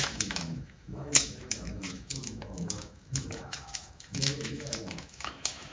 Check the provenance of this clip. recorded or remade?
remade